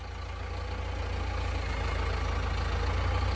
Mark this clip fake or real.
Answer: real